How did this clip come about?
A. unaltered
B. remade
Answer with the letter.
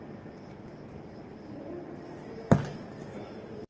A